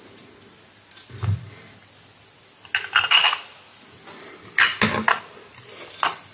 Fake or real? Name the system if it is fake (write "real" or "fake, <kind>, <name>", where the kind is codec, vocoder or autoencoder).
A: real